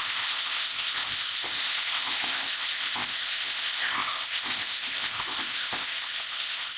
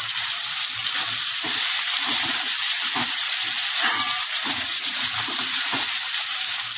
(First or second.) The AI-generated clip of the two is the first